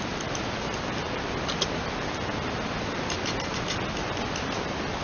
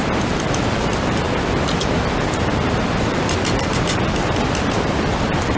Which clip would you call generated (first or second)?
second